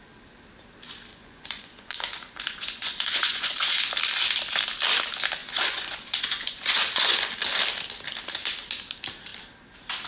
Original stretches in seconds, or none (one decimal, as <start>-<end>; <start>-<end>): 0.0-1.1; 3.8-5.4; 7.3-10.1